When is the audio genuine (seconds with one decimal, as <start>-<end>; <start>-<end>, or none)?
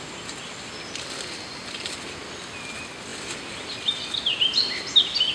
0.0-5.3